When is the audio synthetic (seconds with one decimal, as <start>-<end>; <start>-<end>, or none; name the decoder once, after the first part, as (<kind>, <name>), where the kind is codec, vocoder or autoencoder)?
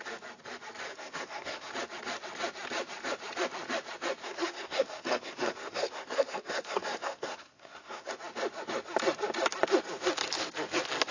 0.9-1.7 (codec, SNAC); 4.2-8.1